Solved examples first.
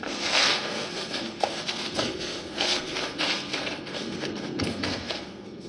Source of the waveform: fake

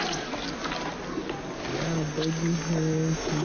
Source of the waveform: real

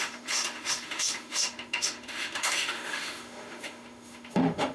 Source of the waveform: fake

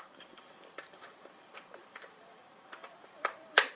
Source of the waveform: fake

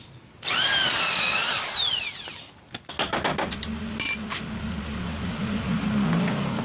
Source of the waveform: real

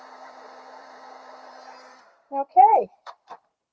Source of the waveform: fake